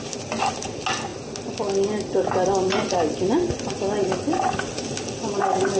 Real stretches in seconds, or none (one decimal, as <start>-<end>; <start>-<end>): 0.0-5.8